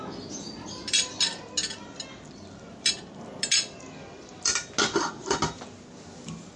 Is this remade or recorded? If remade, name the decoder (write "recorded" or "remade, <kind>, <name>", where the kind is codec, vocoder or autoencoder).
recorded